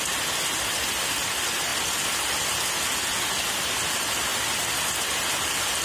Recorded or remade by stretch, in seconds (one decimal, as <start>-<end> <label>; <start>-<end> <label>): 0.0-5.8 recorded